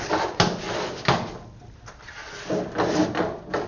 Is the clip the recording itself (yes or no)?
yes